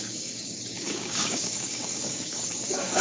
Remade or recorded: remade